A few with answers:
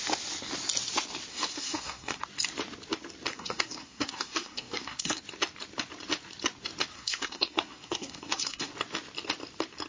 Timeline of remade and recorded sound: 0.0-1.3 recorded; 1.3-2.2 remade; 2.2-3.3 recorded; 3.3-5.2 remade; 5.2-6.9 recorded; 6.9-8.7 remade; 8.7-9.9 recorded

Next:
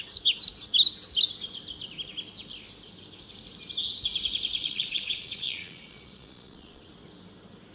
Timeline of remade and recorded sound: 0.0-4.6 recorded; 4.6-6.9 remade; 6.9-7.7 recorded